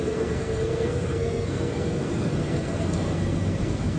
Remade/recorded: remade